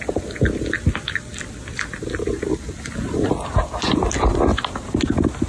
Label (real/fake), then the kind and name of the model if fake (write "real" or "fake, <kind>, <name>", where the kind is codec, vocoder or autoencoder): real